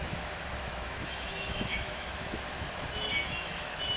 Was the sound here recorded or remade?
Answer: remade